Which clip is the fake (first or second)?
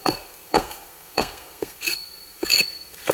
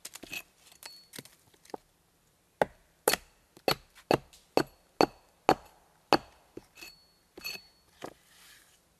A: first